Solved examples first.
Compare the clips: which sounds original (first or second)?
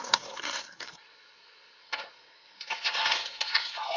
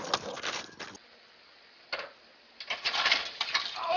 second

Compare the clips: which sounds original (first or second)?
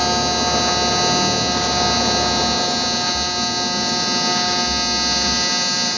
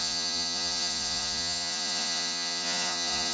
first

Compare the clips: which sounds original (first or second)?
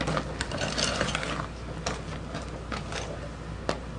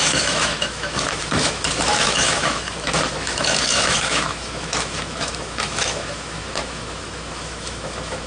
first